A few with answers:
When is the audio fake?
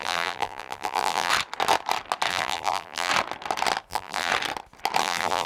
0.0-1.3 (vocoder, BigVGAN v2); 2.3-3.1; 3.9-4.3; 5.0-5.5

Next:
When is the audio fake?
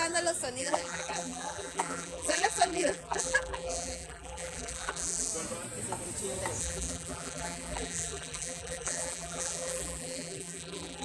0.6-5.3 (vocoder, BigVGAN v2); 6.6-11.0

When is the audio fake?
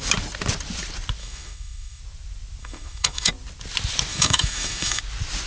1.2-2.0 (autoencoder, DAC-VAE); 2.6-3.3; 4.1-5.0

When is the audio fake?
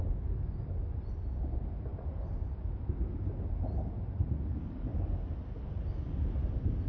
none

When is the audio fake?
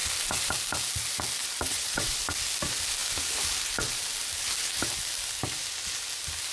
1.4-2.2 (vocoder, WaveNeXt)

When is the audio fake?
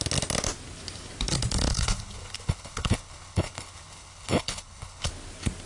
1.7-5.1 (codec, HILCodec)